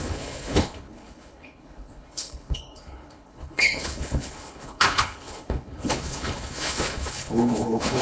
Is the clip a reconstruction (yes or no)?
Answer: yes